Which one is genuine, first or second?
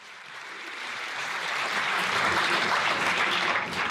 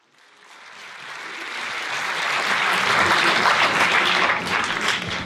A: second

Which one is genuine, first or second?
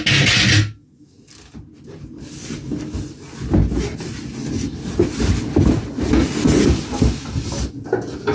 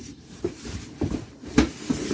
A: first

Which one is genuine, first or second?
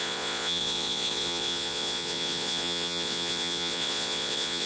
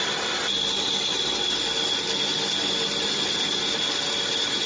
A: second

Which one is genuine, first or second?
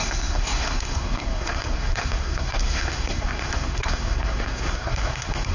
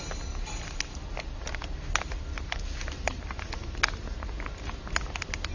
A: second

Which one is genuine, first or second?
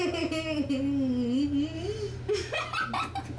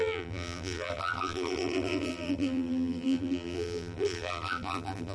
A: first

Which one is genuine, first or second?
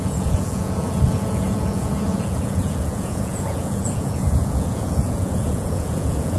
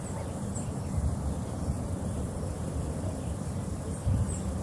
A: second